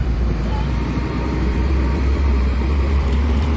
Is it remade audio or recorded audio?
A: remade